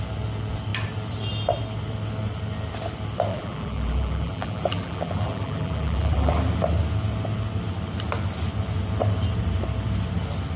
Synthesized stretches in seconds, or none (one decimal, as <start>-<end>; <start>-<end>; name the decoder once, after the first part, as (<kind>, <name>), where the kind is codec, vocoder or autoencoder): 3.3-6.4 (vocoder, BigVGAN v2)